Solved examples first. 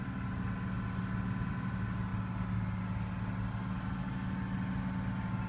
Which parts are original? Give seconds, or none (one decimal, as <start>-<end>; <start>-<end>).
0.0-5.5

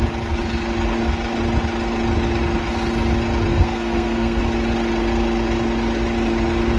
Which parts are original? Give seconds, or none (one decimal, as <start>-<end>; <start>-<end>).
0.0-3.5; 4.4-6.8

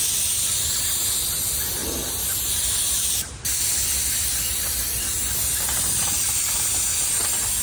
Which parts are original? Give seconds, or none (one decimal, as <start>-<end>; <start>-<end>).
0.0-7.6

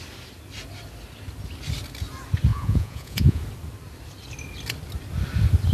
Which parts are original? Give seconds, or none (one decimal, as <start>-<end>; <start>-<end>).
0.0-2.5; 3.4-5.7

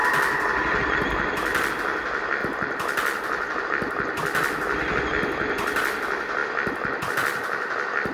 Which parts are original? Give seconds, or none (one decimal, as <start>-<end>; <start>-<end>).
0.0-8.1

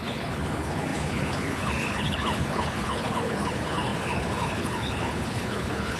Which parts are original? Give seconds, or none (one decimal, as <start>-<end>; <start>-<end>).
none